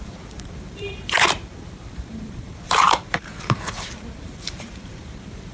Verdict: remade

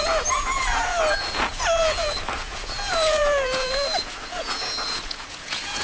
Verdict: remade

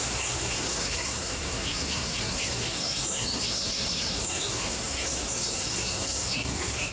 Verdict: remade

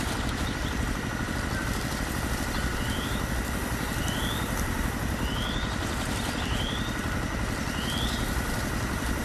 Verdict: remade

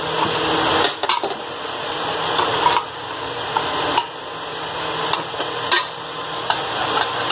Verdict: recorded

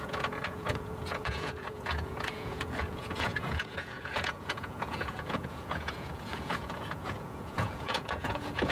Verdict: remade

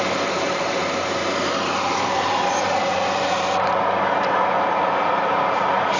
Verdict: remade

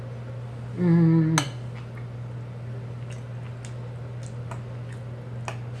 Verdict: recorded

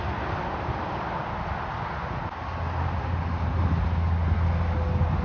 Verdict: recorded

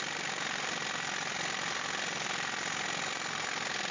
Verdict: recorded